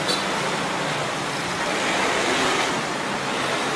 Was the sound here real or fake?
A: real